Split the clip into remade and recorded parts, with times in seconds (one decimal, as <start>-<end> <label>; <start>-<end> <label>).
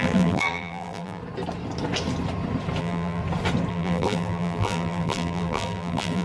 0.0-1.2 remade; 1.2-2.8 recorded; 2.8-3.2 remade; 3.2-3.7 recorded; 3.7-6.2 remade